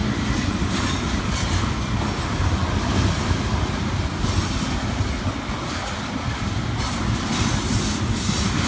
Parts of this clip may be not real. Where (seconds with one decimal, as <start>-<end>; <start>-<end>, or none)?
none